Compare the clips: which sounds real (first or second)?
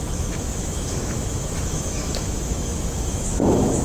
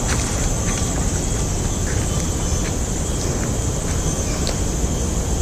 second